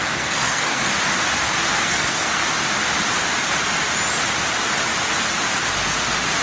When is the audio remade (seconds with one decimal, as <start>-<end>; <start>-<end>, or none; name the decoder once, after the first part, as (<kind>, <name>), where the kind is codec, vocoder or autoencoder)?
0.0-0.9 (codec, SNAC); 1.7-2.4